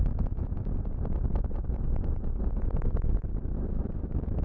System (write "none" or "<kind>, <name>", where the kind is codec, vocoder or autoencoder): none